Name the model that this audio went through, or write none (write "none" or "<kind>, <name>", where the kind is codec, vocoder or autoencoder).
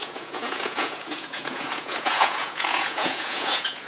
vocoder, Vocos